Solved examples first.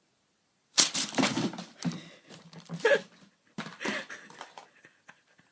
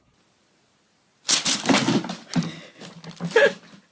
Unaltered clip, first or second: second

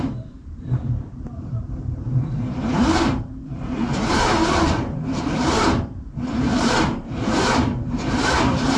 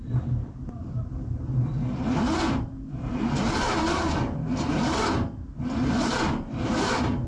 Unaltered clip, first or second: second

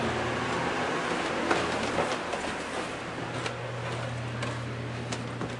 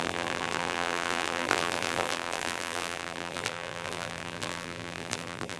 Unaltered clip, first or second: first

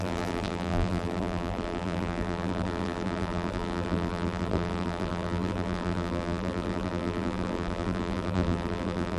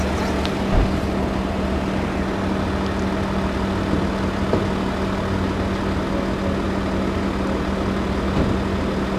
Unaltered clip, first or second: second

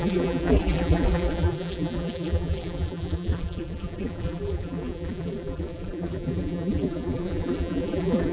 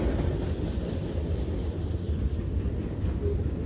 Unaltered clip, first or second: second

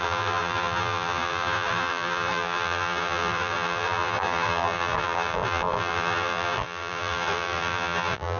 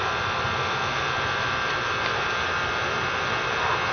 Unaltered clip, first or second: second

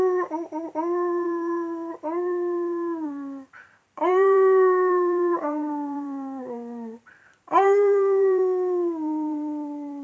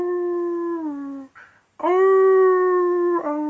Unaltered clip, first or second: second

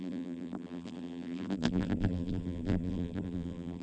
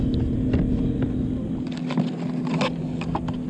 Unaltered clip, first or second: second